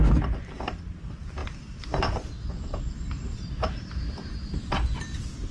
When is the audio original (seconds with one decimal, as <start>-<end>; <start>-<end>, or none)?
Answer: 0.0-5.5